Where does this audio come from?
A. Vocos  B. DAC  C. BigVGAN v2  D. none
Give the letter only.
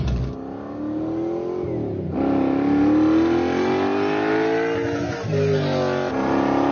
D